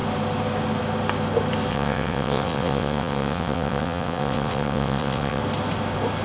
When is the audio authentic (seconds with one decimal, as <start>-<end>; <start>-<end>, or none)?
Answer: 0.0-1.7; 5.4-6.2